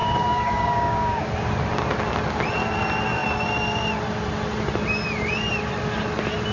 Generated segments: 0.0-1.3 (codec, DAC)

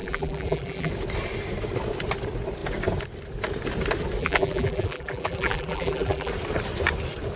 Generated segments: 0.0-0.9 (vocoder, BigVGAN v2); 4.2-6.3

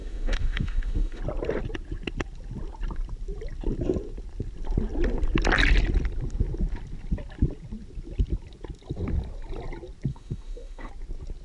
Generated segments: 0.0-1.2 (autoencoder, DAC-VAE); 10.1-10.9

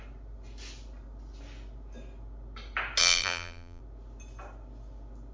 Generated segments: 3.0-3.8 (vocoder, BigVGAN v2)

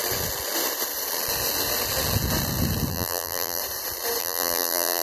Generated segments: 2.9-3.6 (vocoder, BigVGAN v2); 4.2-5.0

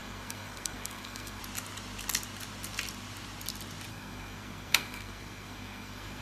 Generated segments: 0.0-1.4 (codec, SNAC); 3.9-6.2

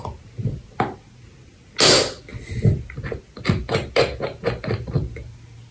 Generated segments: none

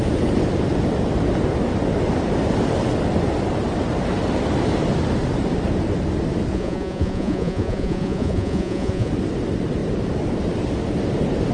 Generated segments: 6.5-9.1 (vocoder, Vocos)